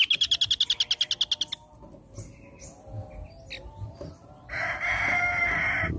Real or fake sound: real